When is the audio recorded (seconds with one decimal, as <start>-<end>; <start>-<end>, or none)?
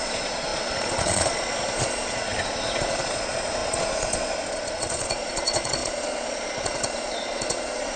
none